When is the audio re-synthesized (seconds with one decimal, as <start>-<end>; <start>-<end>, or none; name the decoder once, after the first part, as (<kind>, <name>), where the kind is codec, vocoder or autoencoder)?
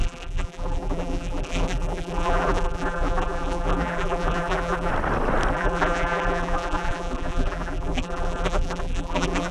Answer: 0.0-4.9 (vocoder, BigVGAN v2); 5.5-9.5